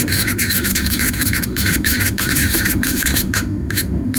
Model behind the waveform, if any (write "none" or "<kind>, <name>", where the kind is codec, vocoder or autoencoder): autoencoder, DAC-VAE